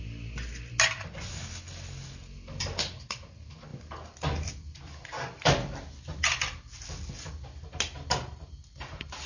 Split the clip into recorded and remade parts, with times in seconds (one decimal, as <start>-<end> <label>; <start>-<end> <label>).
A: 0.0-9.3 recorded